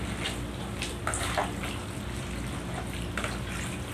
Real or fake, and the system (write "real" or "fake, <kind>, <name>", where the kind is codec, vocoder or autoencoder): real